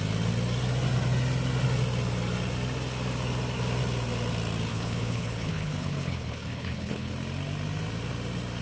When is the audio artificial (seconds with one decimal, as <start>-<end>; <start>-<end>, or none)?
4.7-7.1